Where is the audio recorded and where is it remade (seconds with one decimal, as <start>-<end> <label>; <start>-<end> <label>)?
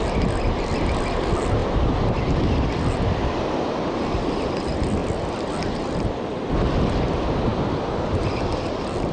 0.0-9.1 recorded